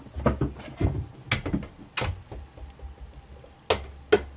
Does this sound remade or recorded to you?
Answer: recorded